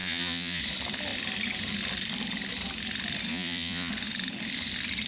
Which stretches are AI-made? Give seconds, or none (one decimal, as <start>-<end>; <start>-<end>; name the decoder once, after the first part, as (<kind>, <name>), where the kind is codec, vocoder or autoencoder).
0.0-0.6 (vocoder, Vocos); 3.3-3.9

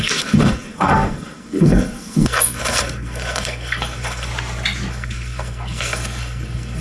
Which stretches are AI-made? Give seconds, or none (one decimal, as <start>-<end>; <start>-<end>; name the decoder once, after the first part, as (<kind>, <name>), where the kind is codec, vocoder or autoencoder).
0.0-4.3 (codec, SNAC); 4.9-6.8

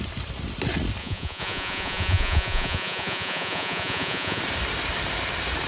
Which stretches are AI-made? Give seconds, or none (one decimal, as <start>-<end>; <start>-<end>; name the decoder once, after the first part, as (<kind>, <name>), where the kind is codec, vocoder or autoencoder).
1.0-4.4 (vocoder, Vocos)

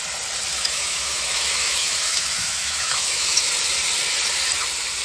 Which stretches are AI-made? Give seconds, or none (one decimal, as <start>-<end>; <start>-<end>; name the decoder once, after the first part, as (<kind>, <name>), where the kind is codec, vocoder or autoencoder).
0.5-3.5 (autoencoder, DAC-VAE)

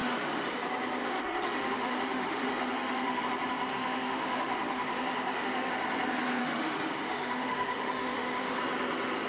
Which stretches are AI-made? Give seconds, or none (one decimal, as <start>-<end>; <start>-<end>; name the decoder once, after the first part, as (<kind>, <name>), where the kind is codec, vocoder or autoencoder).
0.0-0.6 (autoencoder, DAC-VAE); 1.0-3.2; 3.7-5.7; 6.4-8.6